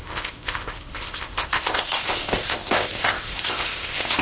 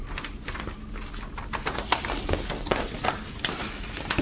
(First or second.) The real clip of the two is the second